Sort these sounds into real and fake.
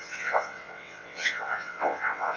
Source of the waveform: fake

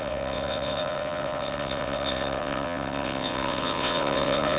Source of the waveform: fake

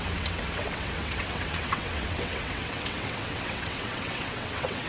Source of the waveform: fake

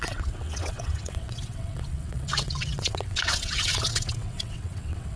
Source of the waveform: fake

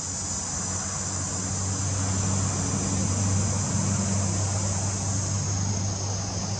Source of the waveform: real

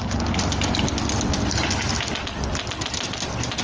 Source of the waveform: real